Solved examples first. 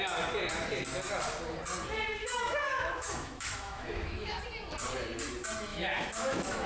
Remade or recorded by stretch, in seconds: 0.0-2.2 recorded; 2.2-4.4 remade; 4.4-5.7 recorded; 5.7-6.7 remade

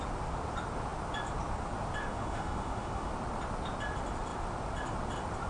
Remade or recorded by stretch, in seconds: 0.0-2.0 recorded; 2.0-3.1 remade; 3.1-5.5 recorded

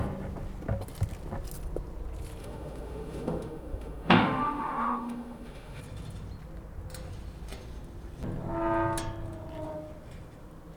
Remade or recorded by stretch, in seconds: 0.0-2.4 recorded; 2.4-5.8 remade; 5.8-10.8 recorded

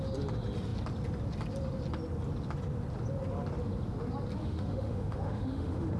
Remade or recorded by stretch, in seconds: 0.0-4.4 recorded; 4.4-6.0 remade

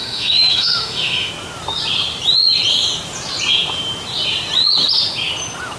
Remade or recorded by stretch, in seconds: 0.0-1.3 remade; 1.3-5.8 recorded

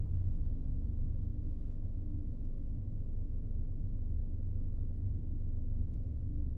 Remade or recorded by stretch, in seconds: 0.0-4.2 remade; 4.2-5.6 recorded; 5.6-6.6 remade

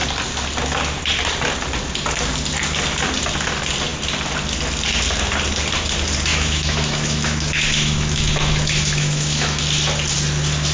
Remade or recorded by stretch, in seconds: 0.0-6.3 recorded; 6.3-9.6 remade; 9.6-10.7 recorded